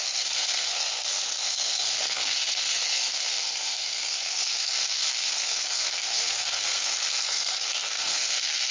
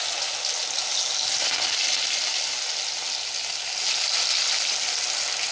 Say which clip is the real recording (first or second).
second